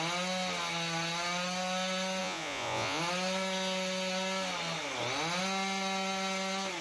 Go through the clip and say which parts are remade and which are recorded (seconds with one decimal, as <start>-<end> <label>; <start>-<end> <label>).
0.0-2.2 recorded; 2.2-3.0 remade; 3.0-6.8 recorded

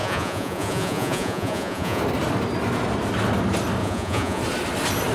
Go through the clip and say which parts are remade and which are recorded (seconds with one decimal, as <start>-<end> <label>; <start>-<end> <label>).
0.0-2.0 remade; 2.0-3.8 recorded; 3.8-4.4 remade; 4.4-5.1 recorded